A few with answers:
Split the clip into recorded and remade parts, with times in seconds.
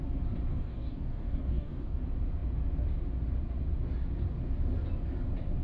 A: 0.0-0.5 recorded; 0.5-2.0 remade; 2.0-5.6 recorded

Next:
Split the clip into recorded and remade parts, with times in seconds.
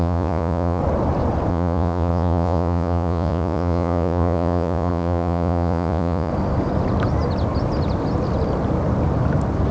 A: 0.0-0.8 remade; 0.8-1.5 recorded; 1.5-6.3 remade; 6.3-9.7 recorded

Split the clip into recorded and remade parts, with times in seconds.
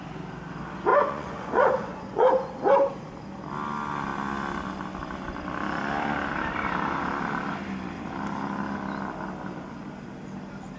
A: 0.0-0.9 recorded; 0.9-2.5 remade; 2.5-10.8 recorded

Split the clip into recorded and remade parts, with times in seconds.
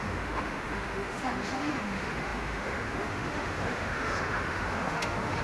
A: 0.0-5.4 remade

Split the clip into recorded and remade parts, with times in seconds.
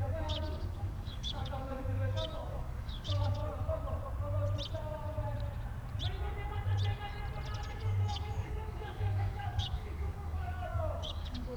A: 0.0-3.4 remade; 3.4-7.7 recorded; 7.7-11.6 remade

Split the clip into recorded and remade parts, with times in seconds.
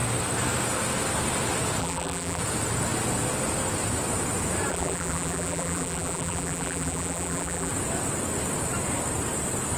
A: 0.0-1.8 recorded; 1.8-2.4 remade; 2.4-4.7 recorded; 4.7-7.7 remade; 7.7-9.8 recorded